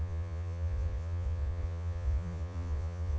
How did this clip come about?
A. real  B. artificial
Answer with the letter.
B